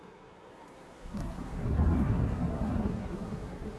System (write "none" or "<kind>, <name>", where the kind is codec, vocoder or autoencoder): codec, SNAC